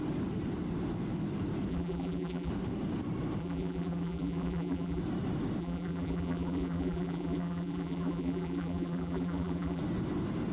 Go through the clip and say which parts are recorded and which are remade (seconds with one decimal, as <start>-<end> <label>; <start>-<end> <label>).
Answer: 0.0-1.7 recorded; 1.7-2.5 remade; 2.5-3.4 recorded; 3.4-5.0 remade; 5.0-5.6 recorded; 5.6-9.8 remade; 9.8-10.5 recorded